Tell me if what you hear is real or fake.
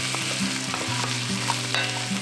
real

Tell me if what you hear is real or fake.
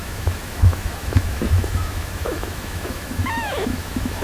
fake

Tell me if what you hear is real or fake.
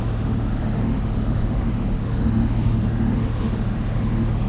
fake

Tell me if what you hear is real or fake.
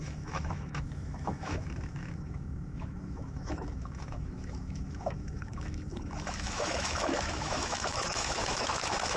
fake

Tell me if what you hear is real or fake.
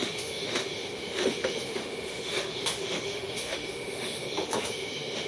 fake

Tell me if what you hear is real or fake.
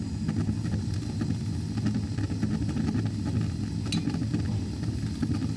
real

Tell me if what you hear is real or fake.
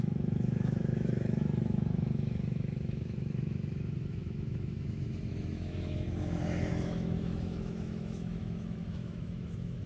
fake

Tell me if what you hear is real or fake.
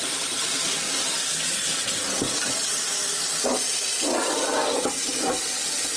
real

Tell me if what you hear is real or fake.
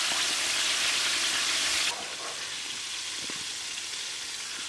real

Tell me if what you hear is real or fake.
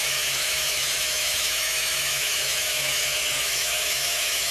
fake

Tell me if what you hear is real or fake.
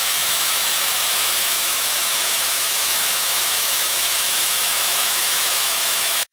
fake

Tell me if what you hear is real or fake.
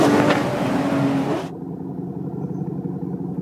real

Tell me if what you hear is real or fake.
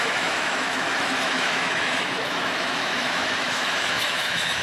fake